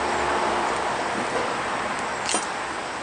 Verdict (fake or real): real